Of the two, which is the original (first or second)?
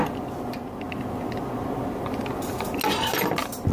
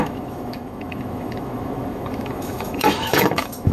first